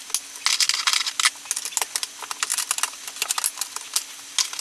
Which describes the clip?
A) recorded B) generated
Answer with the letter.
A